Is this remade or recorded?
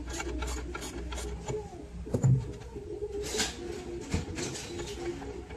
recorded